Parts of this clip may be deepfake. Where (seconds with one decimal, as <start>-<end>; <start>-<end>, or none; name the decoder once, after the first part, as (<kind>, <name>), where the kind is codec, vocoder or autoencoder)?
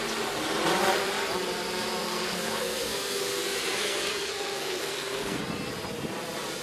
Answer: 2.0-5.4 (codec, SNAC)